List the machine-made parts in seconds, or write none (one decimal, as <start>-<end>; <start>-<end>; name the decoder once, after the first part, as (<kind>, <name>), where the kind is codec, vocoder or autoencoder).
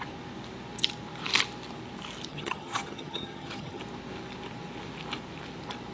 2.3-3.8 (vocoder, HiFi-GAN)